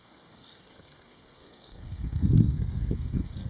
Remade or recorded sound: remade